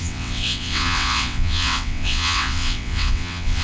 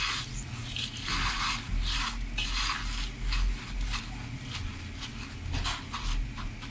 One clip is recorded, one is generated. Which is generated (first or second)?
first